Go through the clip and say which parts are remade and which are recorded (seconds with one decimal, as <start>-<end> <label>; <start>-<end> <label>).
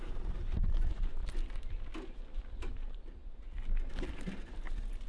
0.0-1.2 remade; 1.2-2.4 recorded; 2.4-3.2 remade; 3.2-3.9 recorded; 3.9-5.1 remade